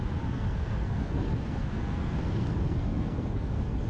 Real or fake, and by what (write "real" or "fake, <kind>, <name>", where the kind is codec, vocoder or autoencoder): fake, codec, SNAC